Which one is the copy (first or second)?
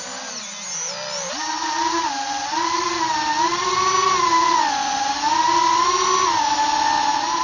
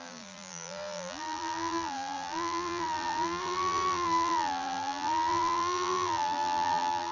second